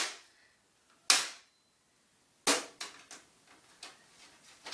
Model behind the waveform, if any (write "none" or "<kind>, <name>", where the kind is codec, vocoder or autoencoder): none